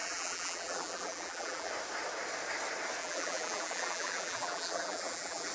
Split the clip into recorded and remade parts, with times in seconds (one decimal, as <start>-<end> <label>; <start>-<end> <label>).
0.0-1.7 remade; 1.7-3.0 recorded; 3.0-5.5 remade